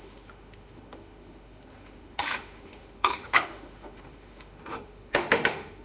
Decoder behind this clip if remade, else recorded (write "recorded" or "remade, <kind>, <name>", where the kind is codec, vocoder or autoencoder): remade, autoencoder, DAC-VAE